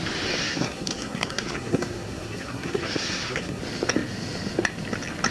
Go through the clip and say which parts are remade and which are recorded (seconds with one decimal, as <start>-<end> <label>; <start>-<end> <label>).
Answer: 0.0-0.4 recorded; 0.4-3.6 remade; 3.6-5.3 recorded